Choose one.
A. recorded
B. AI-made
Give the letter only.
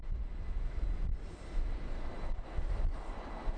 A